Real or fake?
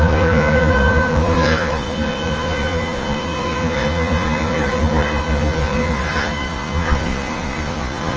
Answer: fake